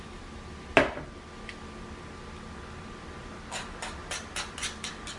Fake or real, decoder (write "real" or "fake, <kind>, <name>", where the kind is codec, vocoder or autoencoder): real